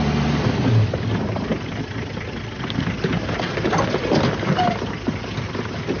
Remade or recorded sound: recorded